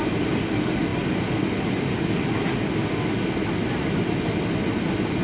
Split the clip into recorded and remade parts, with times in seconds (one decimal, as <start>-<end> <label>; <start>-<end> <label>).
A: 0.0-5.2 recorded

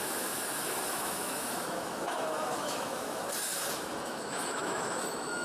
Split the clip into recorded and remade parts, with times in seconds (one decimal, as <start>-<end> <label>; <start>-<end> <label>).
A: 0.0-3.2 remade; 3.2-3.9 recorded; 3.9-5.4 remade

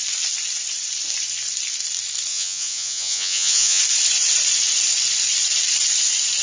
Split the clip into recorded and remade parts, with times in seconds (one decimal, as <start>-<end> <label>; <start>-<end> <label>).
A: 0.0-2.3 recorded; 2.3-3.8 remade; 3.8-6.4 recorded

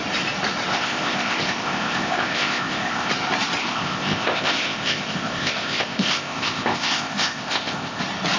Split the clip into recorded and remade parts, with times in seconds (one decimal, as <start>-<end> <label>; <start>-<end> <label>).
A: 0.0-0.7 recorded; 0.7-3.1 remade; 3.1-3.6 recorded; 3.6-8.0 remade; 8.0-8.4 recorded

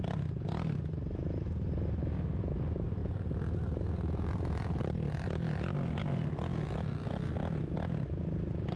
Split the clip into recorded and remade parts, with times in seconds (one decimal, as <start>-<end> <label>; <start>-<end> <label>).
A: 0.0-8.8 recorded

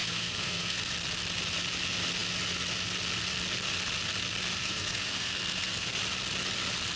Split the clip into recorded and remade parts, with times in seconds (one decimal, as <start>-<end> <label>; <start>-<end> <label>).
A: 0.0-0.9 remade; 0.9-4.6 recorded; 4.6-6.0 remade; 6.0-7.0 recorded

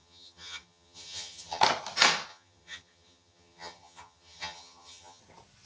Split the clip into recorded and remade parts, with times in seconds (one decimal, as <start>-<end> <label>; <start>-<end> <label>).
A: 0.0-1.6 remade; 1.6-2.3 recorded; 2.3-5.2 remade; 5.2-5.7 recorded